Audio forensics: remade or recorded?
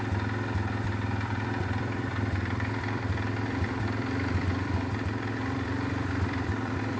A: remade